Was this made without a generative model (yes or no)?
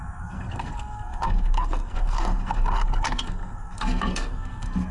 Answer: no